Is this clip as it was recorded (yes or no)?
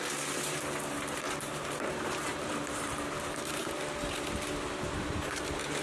no